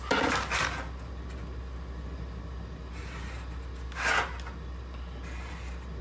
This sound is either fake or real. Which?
real